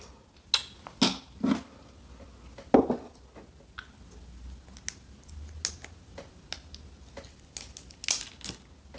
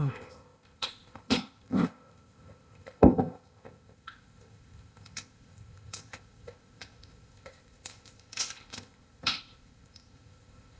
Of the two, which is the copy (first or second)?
second